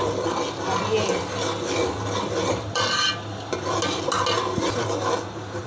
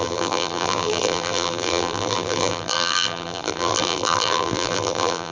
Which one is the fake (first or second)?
second